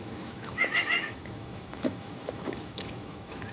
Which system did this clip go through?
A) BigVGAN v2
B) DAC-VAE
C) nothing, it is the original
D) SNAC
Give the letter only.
B